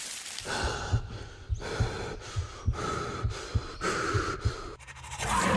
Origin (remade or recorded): recorded